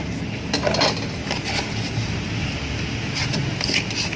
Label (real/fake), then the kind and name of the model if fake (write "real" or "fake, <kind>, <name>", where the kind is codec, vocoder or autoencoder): real